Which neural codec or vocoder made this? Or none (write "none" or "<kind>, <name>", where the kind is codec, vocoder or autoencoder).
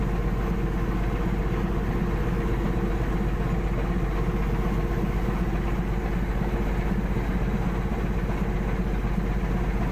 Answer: none